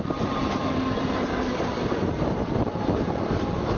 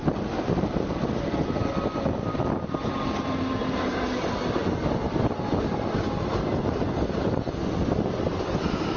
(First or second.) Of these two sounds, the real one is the second